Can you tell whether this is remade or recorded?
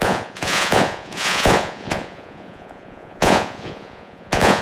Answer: remade